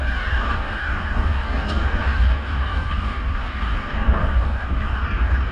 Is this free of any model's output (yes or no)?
no